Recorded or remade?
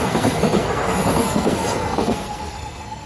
remade